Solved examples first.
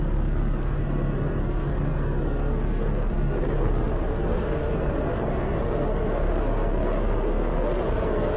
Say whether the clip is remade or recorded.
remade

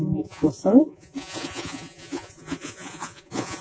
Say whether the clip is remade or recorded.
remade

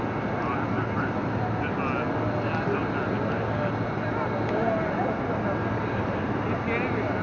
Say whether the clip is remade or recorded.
recorded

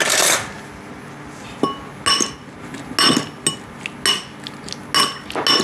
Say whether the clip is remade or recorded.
recorded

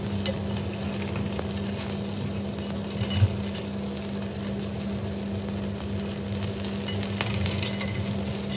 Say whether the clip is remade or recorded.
recorded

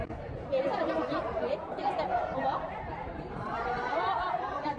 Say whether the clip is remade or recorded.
remade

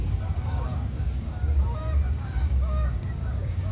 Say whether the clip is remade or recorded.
remade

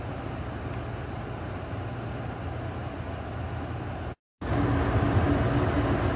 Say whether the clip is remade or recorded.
recorded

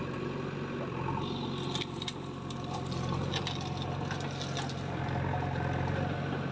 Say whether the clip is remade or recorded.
recorded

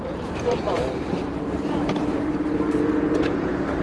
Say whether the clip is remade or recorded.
remade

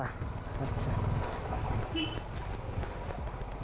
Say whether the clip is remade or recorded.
recorded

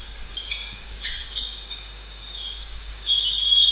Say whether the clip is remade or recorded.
remade